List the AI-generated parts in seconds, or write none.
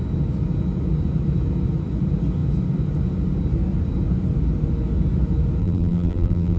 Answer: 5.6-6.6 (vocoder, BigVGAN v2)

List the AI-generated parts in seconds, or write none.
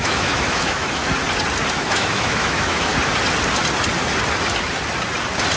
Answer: 0.0-1.1 (autoencoder, DAC-VAE); 1.7-2.9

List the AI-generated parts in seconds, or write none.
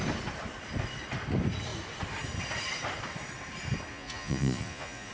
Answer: 3.9-5.1 (vocoder, Vocos)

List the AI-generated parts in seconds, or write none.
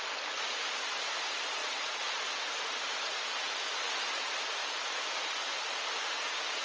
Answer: 1.6-2.4 (vocoder, Vocos)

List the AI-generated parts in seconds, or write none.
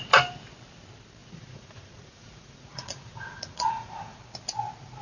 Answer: 1.2-4.2 (vocoder, Vocos)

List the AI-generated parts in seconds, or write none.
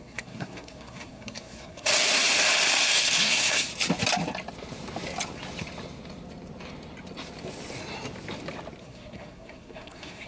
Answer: 0.0-1.9 (codec, SNAC); 3.2-3.7; 8.8-10.3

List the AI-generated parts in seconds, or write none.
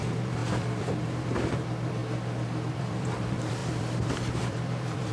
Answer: 0.0-2.0 (vocoder, BigVGAN v2); 2.7-5.1